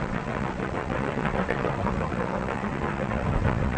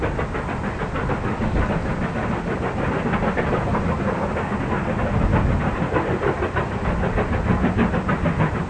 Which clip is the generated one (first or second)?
first